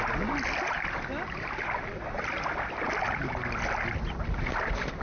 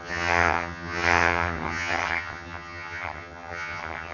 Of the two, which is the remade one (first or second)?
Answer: second